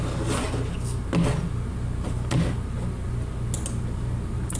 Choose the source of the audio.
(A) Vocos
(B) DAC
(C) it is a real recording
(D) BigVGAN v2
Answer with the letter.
C